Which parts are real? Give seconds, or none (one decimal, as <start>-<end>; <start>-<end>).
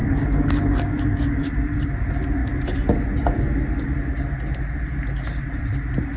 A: 1.4-6.2